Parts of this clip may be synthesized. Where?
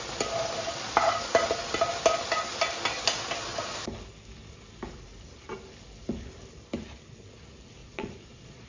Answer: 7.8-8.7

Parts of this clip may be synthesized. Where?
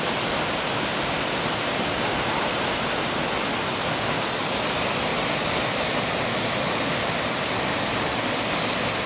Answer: none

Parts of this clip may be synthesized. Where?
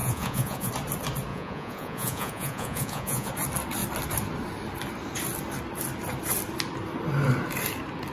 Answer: 0.0-0.7; 1.3-3.3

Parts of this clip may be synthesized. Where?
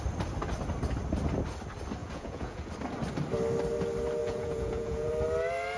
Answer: 2.0-2.7; 4.2-5.1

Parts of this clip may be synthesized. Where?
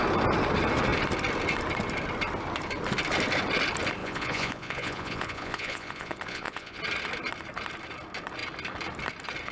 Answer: 4.0-6.8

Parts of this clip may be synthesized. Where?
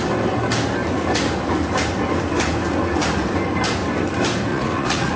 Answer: 4.5-5.2